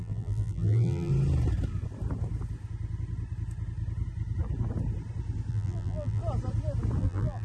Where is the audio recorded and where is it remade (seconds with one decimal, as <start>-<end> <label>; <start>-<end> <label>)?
0.0-1.1 remade; 1.1-5.5 recorded; 5.5-6.2 remade; 6.2-7.0 recorded; 7.0-7.4 remade